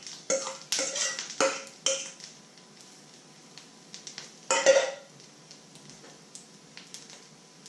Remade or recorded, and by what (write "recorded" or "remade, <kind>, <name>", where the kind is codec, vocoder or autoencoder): recorded